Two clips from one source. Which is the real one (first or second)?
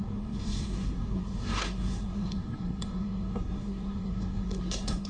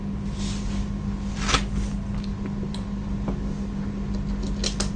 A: second